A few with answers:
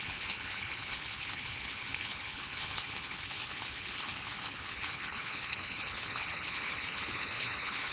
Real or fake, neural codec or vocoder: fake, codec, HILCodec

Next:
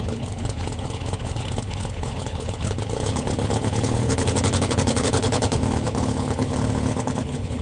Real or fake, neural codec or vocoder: fake, codec, HILCodec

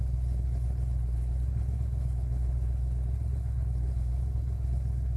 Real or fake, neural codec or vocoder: fake, codec, HILCodec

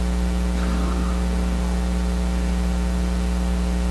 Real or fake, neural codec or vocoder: real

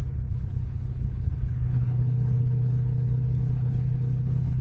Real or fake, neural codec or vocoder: fake, codec, HILCodec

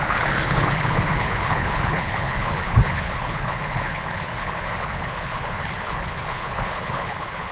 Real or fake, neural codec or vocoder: fake, codec, HILCodec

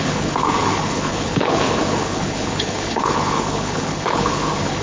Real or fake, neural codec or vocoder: fake, codec, HILCodec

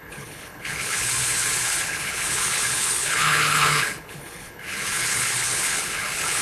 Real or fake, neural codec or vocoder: fake, codec, HILCodec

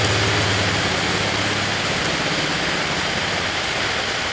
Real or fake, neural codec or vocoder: real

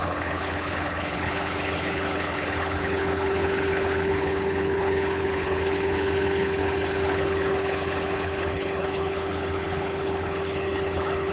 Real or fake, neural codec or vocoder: fake, codec, HILCodec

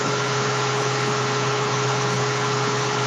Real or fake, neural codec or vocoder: fake, codec, HILCodec